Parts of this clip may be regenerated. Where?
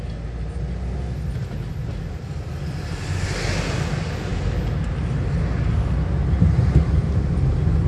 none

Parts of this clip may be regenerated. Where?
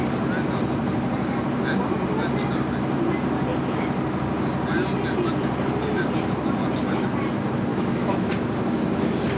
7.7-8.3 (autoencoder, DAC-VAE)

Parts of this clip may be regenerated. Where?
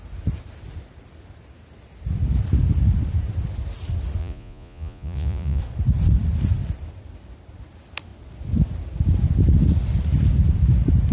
4.2-5.6 (vocoder, Vocos)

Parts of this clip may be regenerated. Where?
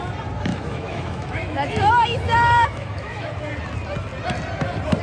0.5-3.4 (autoencoder, DAC-VAE)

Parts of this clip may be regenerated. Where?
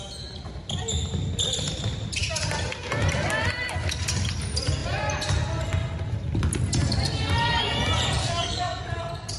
8.2-8.8 (codec, SNAC)